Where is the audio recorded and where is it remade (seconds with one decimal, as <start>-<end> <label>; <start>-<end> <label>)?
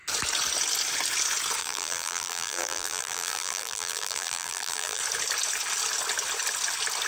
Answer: 0.0-1.6 recorded; 1.6-5.0 remade; 5.0-7.1 recorded